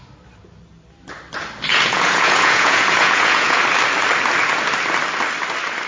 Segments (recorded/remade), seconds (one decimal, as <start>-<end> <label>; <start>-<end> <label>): 0.0-1.7 recorded; 1.7-3.6 remade; 3.6-5.9 recorded